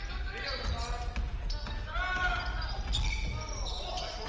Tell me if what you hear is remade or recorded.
recorded